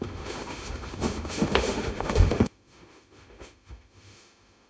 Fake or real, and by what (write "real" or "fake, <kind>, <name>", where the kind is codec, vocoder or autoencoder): fake, autoencoder, DAC-VAE